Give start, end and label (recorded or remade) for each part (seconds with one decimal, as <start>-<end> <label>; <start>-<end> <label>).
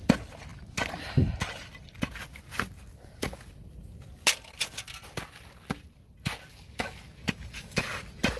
0.0-2.9 recorded; 2.9-3.5 remade; 3.5-6.5 recorded; 6.5-8.0 remade; 8.0-8.4 recorded